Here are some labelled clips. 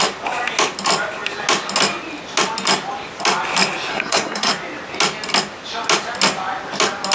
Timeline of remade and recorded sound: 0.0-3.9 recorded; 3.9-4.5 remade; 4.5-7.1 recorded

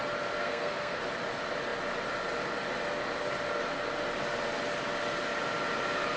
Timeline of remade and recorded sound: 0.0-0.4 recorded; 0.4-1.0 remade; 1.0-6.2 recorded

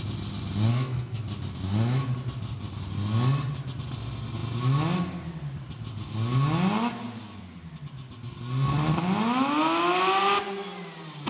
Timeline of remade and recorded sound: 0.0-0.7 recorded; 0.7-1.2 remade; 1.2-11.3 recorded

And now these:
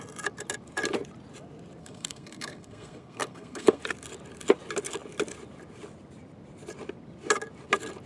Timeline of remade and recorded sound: 0.0-1.8 recorded; 1.8-3.8 remade; 3.8-8.1 recorded

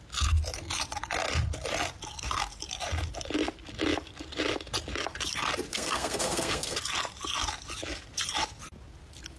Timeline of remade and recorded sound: 0.0-5.7 recorded; 5.7-6.8 remade; 6.8-9.4 recorded